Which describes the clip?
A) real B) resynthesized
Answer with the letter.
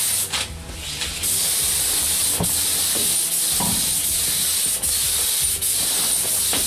A